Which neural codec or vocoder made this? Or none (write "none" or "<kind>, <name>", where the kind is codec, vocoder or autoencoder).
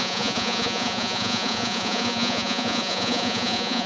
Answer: vocoder, Vocos